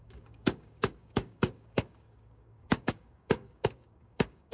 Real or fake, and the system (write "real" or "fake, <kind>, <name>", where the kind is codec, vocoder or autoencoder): fake, codec, DAC